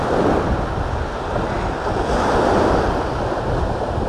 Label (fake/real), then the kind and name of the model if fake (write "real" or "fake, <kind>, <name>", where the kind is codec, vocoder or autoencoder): real